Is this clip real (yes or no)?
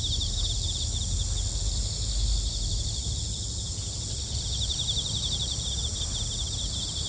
yes